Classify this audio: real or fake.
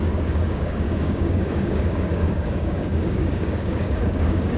fake